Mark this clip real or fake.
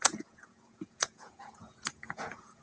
fake